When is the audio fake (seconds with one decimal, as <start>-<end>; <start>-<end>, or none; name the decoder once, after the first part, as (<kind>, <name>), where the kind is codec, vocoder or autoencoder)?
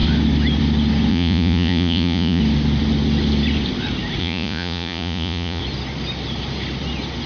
1.1-2.4 (vocoder, Vocos); 4.2-5.6